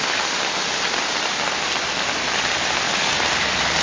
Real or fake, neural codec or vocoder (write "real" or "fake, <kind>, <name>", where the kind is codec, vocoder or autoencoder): real